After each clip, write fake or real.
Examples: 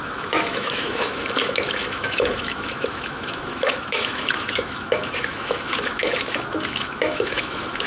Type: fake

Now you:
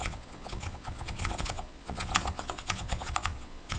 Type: fake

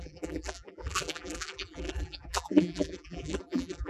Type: fake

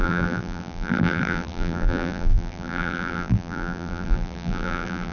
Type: fake